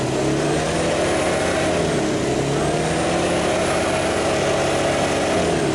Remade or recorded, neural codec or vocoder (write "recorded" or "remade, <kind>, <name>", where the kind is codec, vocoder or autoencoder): recorded